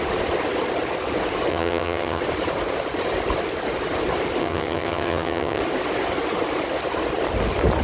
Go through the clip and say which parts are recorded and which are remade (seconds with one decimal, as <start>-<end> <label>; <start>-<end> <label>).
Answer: 0.0-1.5 recorded; 1.5-2.2 remade; 2.2-4.4 recorded; 4.4-5.6 remade; 5.6-7.8 recorded

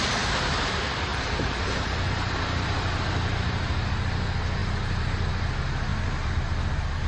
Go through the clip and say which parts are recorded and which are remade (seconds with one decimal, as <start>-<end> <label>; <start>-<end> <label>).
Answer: 0.0-1.1 recorded; 1.1-3.9 remade; 3.9-4.6 recorded; 4.6-5.3 remade; 5.3-7.1 recorded

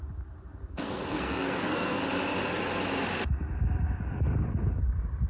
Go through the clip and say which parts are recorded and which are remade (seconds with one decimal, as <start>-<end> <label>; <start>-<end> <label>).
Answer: 0.0-0.7 recorded; 0.7-2.0 remade; 2.0-5.3 recorded

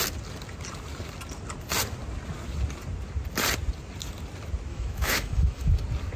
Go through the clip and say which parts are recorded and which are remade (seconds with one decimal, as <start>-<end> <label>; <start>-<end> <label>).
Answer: 0.0-4.7 recorded; 4.7-5.7 remade; 5.7-6.2 recorded

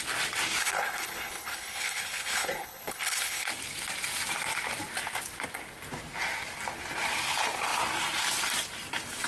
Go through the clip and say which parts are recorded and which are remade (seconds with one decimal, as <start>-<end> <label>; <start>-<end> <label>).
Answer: 0.0-0.6 recorded; 0.6-3.5 remade; 3.5-9.3 recorded